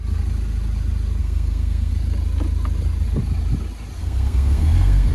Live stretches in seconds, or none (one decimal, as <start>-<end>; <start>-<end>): 0.0-1.2; 1.9-4.0